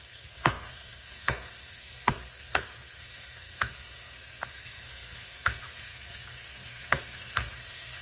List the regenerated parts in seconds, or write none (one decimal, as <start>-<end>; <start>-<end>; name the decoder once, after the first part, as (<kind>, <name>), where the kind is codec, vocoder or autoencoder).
0.0-8.0 (codec, SNAC)